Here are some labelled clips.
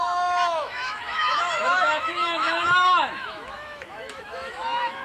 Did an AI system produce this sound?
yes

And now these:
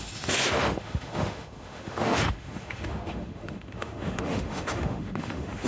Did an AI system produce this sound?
yes